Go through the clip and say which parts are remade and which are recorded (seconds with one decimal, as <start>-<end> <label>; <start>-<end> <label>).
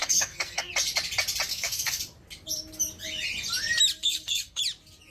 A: 0.0-0.7 remade; 0.7-1.5 recorded; 1.5-2.0 remade; 2.0-4.0 recorded; 4.0-4.6 remade; 4.6-5.1 recorded